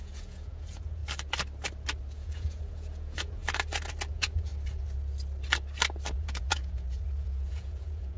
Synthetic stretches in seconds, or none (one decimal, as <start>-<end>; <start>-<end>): 0.0-1.0; 2.1-3.4; 4.1-4.5; 6.1-8.2

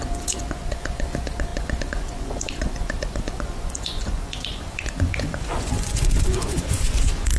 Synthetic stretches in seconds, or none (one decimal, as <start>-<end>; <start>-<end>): 0.0-7.4

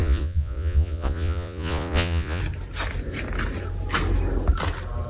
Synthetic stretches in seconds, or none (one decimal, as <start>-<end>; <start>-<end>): 0.0-2.4

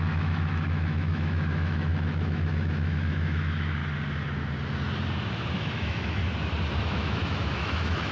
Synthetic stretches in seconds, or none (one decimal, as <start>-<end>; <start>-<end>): 0.0-3.8; 5.5-6.2; 6.8-8.1